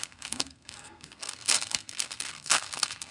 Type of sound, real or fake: fake